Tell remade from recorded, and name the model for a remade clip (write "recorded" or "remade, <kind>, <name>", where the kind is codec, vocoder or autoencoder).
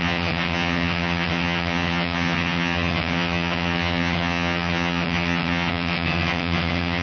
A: remade, vocoder, HiFi-GAN